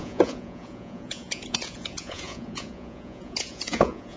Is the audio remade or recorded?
remade